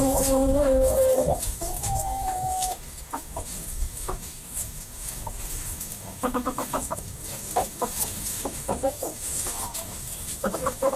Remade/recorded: remade